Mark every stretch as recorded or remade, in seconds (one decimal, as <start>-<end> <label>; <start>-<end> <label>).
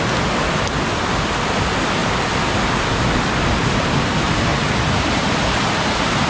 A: 0.0-4.5 recorded; 4.5-6.3 remade